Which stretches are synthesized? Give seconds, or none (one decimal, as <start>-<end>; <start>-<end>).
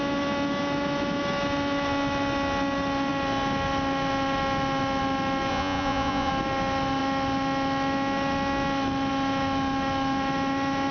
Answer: 5.5-6.3